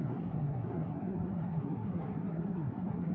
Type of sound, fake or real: fake